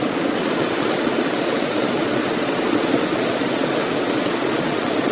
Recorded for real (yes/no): no